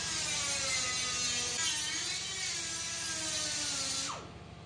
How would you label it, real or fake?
real